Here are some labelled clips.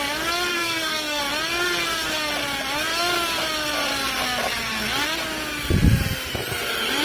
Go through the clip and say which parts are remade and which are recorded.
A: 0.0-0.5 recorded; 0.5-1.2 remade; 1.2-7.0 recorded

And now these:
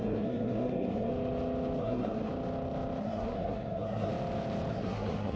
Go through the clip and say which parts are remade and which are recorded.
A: 0.0-1.1 remade; 1.1-1.8 recorded; 1.8-2.3 remade; 2.3-3.0 recorded; 3.0-4.1 remade; 4.1-4.7 recorded; 4.7-5.4 remade

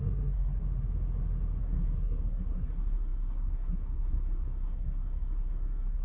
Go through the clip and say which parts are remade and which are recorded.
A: 0.0-0.6 remade; 0.6-1.6 recorded; 1.6-6.0 remade